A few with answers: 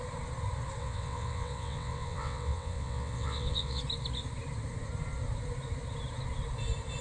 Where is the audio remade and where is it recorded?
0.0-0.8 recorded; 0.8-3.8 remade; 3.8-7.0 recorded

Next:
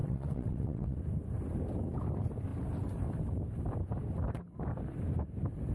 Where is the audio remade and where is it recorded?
0.0-1.0 remade; 1.0-5.7 recorded

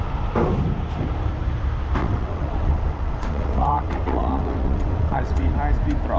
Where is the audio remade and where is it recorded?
0.0-2.0 recorded; 2.0-5.5 remade; 5.5-6.2 recorded

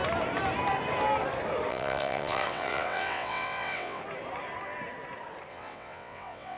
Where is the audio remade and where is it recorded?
0.0-1.7 recorded; 1.7-4.0 remade; 4.0-5.5 recorded; 5.5-6.6 remade